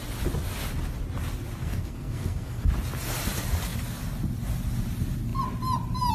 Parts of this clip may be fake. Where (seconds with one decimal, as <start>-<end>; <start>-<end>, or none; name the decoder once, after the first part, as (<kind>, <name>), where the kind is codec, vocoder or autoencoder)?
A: 1.6-2.7 (codec, SNAC)